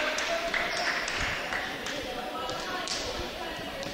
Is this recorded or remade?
remade